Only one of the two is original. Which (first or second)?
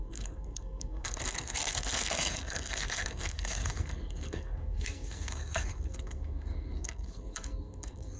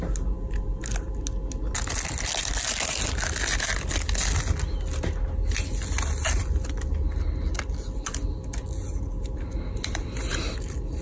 second